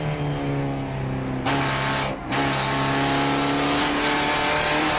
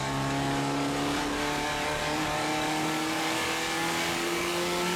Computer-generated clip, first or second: second